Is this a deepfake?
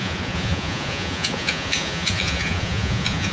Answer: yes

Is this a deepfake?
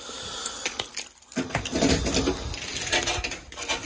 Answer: no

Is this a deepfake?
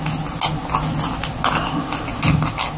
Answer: no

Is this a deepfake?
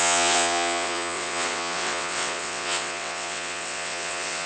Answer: yes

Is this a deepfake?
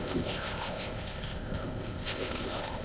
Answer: yes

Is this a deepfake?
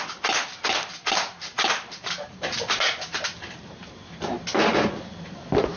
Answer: no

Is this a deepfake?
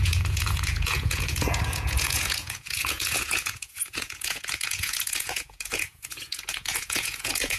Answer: yes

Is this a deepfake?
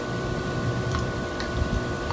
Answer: yes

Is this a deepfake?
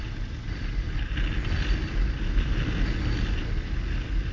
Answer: no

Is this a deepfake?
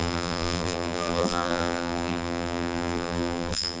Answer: yes